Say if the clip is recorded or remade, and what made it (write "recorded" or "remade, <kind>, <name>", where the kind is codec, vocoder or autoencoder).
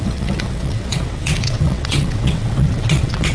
remade, vocoder, WaveNeXt